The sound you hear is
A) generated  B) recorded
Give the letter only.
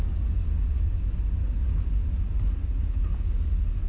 B